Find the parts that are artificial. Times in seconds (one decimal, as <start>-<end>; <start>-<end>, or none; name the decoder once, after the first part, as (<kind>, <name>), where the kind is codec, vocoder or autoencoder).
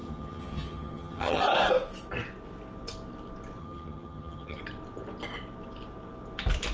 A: 0.0-1.4 (vocoder, HiFi-GAN); 3.6-4.6